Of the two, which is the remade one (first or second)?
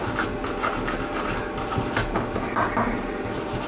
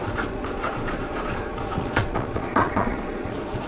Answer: second